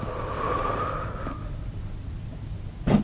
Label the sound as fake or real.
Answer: real